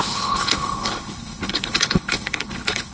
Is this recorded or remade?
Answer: remade